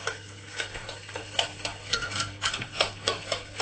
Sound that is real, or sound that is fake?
fake